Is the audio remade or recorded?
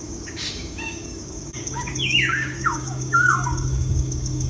remade